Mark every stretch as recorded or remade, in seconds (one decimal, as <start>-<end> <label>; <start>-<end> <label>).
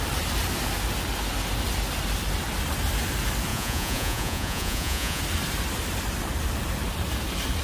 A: 0.0-3.5 recorded; 3.5-5.2 remade; 5.2-7.6 recorded